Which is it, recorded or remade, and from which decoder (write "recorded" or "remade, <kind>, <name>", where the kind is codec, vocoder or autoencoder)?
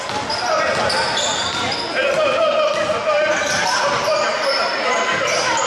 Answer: recorded